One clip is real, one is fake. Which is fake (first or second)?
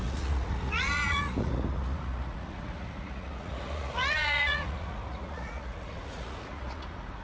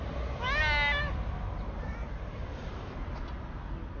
first